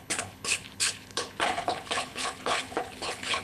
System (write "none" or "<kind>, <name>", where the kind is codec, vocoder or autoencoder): codec, HILCodec